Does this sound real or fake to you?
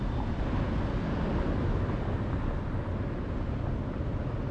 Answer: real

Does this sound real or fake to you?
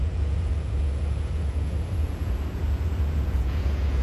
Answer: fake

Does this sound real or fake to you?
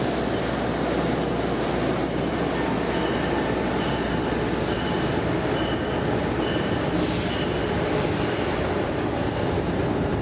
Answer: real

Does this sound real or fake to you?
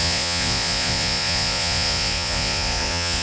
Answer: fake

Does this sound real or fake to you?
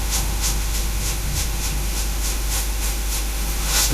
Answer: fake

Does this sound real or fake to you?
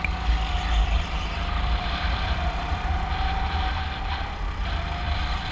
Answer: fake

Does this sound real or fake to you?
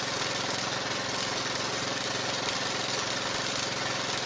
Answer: real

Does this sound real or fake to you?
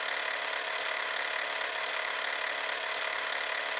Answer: real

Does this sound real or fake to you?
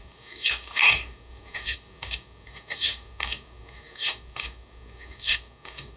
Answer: fake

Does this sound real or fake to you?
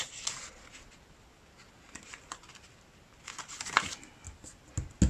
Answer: real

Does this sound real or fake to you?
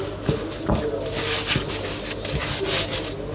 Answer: real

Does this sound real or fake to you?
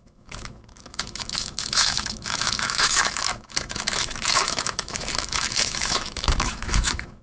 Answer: fake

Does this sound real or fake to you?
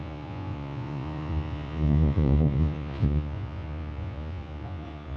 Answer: fake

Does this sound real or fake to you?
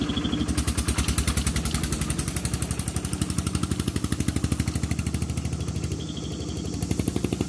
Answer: real